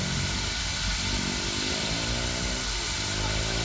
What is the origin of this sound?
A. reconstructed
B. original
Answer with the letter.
B